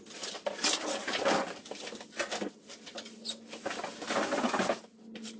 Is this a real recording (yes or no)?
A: yes